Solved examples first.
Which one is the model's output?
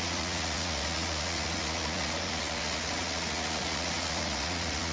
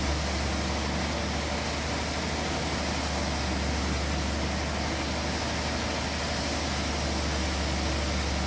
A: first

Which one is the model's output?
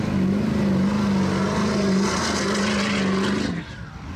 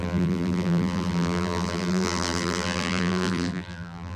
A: second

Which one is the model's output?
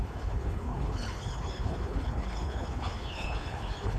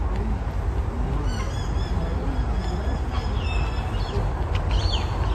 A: first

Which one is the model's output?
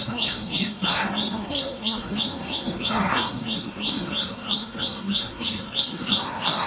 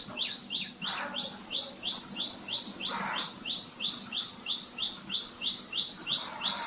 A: first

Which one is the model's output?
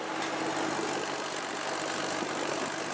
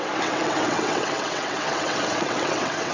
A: second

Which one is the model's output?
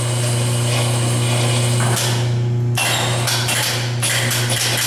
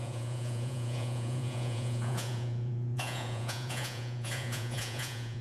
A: second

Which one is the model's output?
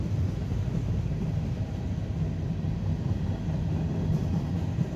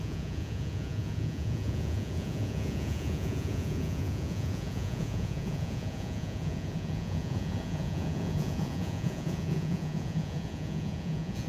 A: second